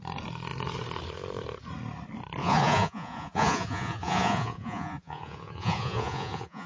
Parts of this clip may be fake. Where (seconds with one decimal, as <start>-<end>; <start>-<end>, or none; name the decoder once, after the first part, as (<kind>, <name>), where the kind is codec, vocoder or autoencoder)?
2.4-6.7 (vocoder, Vocos)